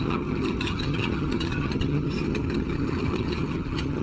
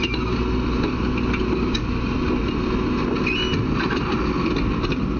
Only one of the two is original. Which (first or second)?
second